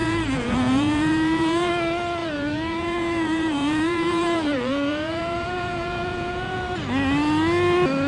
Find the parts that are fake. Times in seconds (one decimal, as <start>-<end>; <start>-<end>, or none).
0.0-1.7; 2.2-6.6